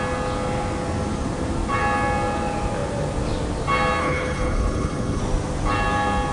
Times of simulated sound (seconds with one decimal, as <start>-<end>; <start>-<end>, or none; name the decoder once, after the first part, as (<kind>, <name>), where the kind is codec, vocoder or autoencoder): 4.0-5.2 (codec, HILCodec)